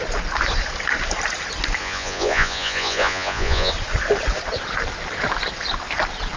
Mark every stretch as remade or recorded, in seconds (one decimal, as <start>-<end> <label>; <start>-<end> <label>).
0.0-1.8 recorded; 1.8-3.7 remade; 3.7-6.4 recorded